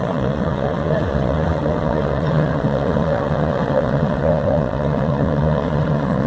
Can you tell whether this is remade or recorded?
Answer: remade